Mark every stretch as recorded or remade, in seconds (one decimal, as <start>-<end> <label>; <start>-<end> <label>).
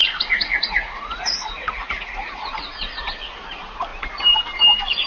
0.0-3.1 remade; 3.1-5.1 recorded